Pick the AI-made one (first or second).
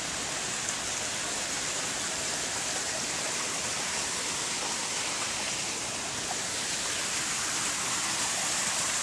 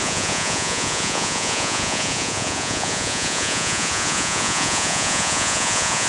second